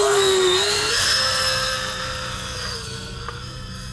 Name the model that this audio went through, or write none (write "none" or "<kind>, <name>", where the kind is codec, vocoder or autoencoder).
codec, SNAC